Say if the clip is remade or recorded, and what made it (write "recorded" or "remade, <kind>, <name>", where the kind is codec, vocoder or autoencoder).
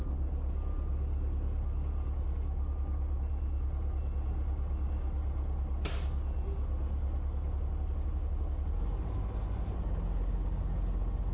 recorded